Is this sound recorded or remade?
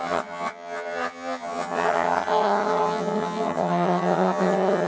remade